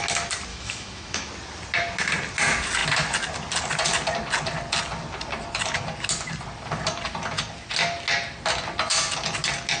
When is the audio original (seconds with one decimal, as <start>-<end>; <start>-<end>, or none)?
0.0-0.5; 1.3-9.8

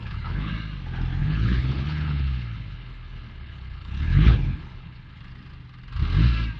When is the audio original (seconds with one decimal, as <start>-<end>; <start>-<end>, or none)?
0.5-1.2; 5.2-6.6